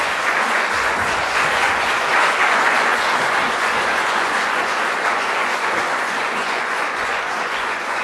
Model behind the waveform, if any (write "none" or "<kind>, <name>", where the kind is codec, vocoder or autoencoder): vocoder, Vocos